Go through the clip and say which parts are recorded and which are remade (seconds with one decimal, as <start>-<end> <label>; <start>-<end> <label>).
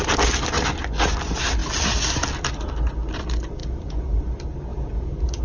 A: 0.0-3.6 recorded; 3.6-4.2 remade; 4.2-4.7 recorded; 4.7-5.4 remade